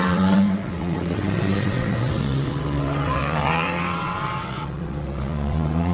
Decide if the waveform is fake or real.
fake